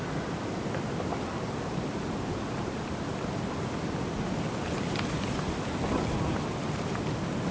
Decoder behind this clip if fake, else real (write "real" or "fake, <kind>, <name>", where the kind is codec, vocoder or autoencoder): real